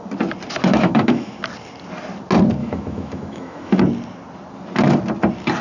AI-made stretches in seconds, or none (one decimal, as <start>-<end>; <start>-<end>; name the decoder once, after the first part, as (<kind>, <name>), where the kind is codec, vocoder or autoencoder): 0.7-1.4 (autoencoder, DAC-VAE); 2.6-3.8